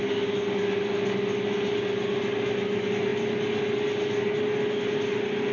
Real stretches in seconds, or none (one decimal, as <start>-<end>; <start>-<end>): 0.0-5.5